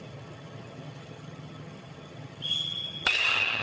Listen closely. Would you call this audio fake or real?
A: fake